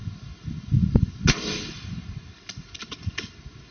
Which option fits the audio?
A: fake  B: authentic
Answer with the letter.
B